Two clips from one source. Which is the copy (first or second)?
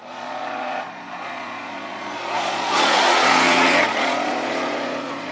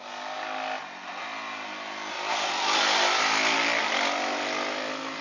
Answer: first